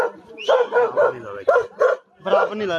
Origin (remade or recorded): recorded